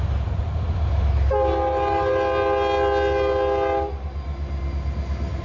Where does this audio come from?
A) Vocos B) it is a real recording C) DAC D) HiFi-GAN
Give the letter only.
B